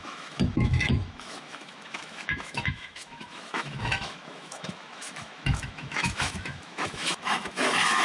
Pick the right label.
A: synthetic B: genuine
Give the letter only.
A